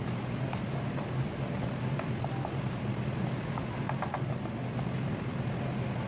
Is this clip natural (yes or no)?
yes